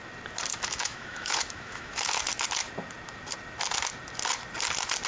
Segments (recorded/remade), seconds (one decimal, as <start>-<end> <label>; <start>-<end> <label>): 0.0-0.5 recorded; 0.5-2.3 remade; 2.3-5.1 recorded